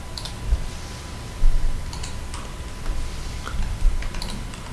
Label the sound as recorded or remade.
recorded